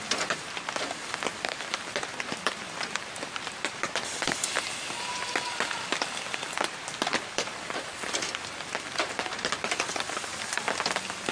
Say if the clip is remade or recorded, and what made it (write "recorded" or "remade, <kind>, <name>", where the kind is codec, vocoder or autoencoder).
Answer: remade, vocoder, BigVGAN v2